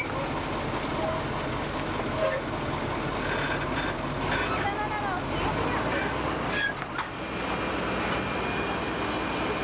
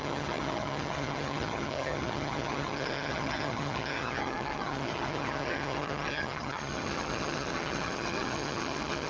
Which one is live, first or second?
first